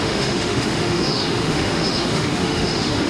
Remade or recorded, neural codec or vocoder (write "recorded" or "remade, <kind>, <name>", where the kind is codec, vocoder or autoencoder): remade, autoencoder, DAC-VAE